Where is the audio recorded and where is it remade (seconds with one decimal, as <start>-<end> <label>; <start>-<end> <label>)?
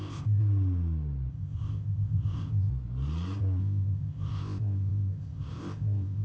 0.0-0.4 remade; 0.4-1.3 recorded; 1.3-2.7 remade; 2.7-3.6 recorded; 3.6-6.2 remade